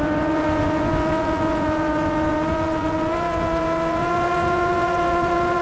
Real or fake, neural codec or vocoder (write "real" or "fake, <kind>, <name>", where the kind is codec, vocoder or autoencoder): fake, vocoder, Vocos